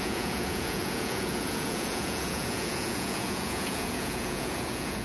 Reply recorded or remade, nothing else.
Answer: remade